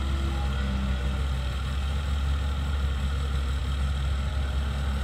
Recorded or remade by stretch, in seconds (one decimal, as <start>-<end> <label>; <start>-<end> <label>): 0.0-5.0 recorded